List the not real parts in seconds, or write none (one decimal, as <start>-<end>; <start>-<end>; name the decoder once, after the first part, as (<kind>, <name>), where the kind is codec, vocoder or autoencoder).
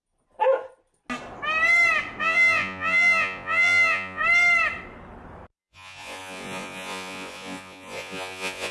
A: 2.2-4.2 (vocoder, Vocos); 5.6-8.7